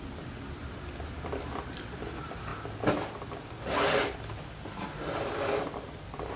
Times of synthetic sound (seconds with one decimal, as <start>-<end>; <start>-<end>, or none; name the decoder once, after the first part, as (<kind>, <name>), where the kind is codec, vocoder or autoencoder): 0.0-2.5 (vocoder, BigVGAN v2)